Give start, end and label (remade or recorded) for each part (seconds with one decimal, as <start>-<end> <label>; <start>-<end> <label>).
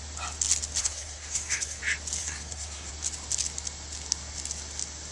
0.0-0.8 recorded; 0.8-1.8 remade; 1.8-2.2 recorded; 2.2-2.9 remade; 2.9-5.1 recorded